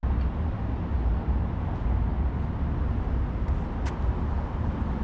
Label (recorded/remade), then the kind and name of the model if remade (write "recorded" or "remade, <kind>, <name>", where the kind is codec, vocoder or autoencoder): recorded